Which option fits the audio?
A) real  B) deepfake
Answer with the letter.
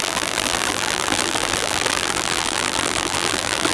B